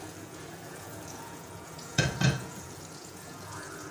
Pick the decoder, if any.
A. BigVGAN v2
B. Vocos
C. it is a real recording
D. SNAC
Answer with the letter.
B